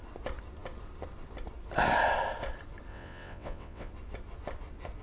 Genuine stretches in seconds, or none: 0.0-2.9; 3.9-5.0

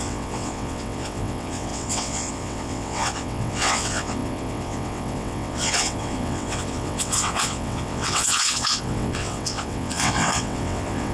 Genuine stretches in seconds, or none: none

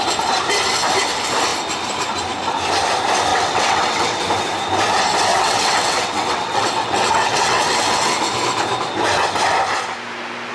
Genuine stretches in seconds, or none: 0.0-3.3; 4.2-5.3; 8.2-10.5

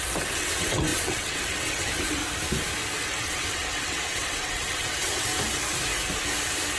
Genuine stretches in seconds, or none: 2.2-3.0; 5.3-6.8

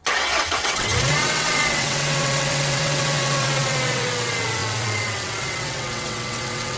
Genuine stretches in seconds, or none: none